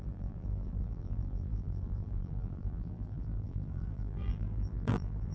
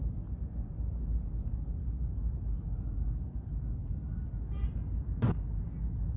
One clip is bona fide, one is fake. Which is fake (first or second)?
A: first